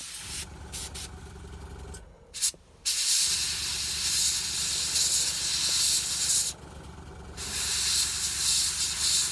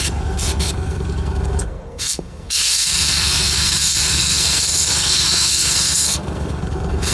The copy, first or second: second